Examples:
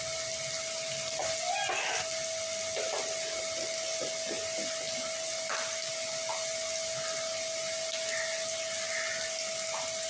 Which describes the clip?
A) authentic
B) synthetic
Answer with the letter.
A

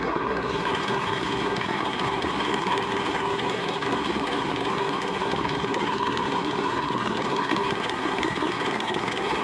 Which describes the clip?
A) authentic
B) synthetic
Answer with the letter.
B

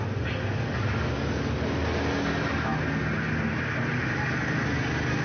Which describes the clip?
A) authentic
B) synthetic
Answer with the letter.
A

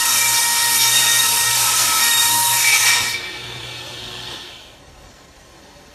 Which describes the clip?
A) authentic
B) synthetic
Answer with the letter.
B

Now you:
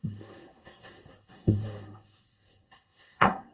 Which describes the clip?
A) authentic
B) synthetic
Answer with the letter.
B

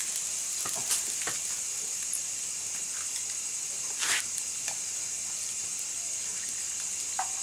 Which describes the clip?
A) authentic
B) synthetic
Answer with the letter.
A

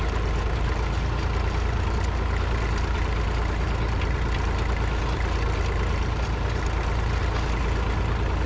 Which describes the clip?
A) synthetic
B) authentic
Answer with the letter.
B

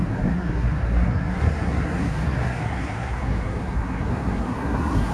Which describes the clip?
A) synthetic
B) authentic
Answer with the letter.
A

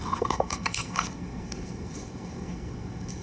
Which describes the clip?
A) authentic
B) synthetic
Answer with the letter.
B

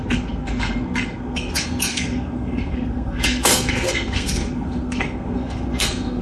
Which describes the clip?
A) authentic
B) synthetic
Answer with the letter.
B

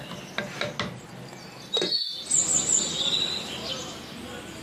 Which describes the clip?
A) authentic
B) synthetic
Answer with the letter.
A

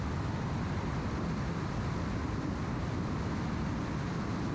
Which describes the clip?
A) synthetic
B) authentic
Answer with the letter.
B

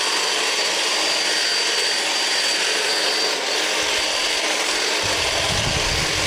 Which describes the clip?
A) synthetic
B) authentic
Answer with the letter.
B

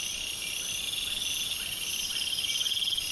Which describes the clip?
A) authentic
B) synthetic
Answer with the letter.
A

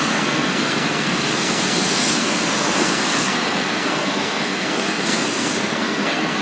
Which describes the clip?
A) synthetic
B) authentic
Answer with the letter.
A